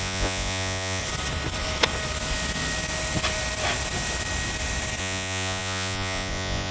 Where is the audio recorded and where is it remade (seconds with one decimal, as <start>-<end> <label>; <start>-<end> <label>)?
0.0-1.0 remade; 1.0-5.0 recorded; 5.0-6.7 remade